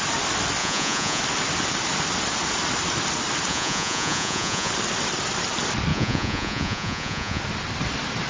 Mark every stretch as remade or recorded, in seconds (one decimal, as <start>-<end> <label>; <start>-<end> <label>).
0.0-0.6 recorded; 0.6-1.2 remade; 1.2-3.5 recorded; 3.5-4.7 remade; 4.7-5.9 recorded; 5.9-7.4 remade; 7.4-8.3 recorded